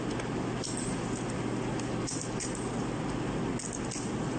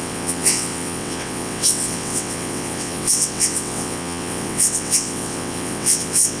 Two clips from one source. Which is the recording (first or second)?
first